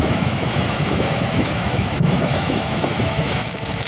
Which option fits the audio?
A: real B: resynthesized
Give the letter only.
B